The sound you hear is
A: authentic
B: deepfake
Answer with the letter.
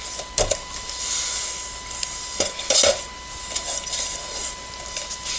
A